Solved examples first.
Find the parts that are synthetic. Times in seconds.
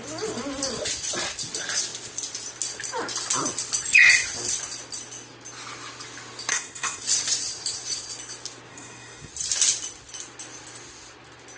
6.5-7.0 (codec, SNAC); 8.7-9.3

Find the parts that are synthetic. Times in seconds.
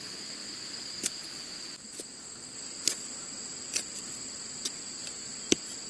none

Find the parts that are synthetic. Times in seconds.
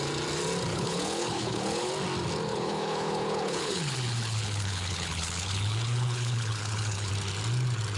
0.7-1.9 (codec, HILCodec); 2.5-7.1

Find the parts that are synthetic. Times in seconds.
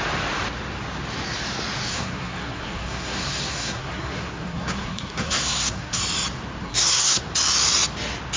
1.9-6.0 (codec, SNAC); 6.6-7.2